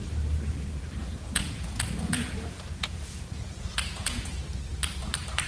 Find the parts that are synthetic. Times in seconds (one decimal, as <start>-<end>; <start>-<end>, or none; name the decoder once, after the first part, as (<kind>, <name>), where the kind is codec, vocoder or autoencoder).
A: 1.0-4.3 (vocoder, Vocos)